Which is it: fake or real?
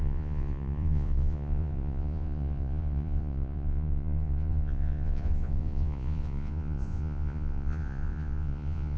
fake